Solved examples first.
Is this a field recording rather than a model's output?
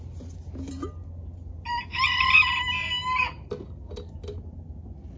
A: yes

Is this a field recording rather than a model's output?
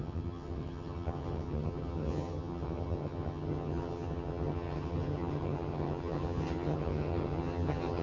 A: no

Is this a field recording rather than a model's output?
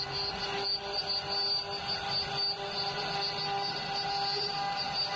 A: yes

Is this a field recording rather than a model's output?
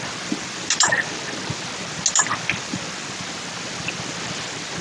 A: yes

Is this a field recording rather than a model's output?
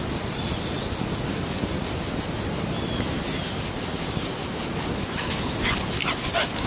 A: yes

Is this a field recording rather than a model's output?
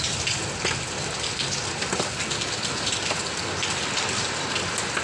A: yes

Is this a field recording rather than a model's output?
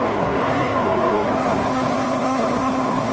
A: no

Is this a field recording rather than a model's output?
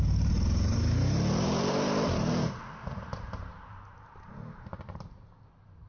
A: no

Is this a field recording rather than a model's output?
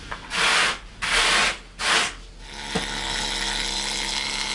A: yes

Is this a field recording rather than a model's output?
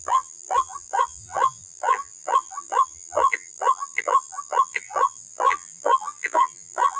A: no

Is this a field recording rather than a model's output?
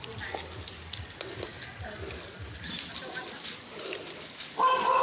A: yes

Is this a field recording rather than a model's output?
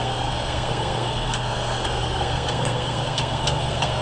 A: no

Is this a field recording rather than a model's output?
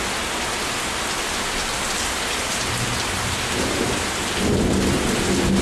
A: yes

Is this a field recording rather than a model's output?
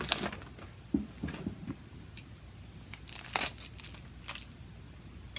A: yes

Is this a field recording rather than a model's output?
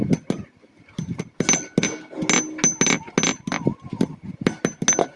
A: yes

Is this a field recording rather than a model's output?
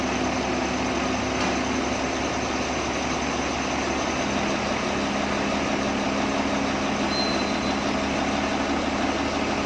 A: yes